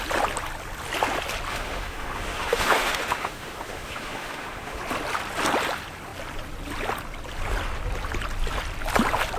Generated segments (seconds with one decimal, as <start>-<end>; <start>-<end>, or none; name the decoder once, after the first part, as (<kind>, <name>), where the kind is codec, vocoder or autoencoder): 1.5-4.8 (autoencoder, DAC-VAE)